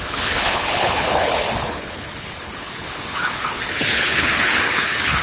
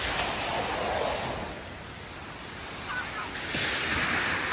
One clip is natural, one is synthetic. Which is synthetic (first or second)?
first